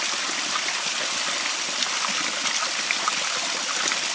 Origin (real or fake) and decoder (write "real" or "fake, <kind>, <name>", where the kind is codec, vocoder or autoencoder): real